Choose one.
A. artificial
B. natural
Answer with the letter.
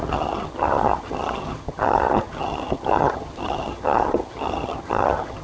A